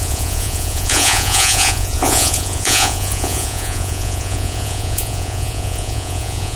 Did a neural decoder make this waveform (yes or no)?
yes